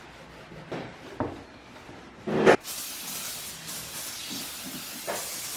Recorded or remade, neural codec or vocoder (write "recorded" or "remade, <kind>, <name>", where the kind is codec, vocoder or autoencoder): recorded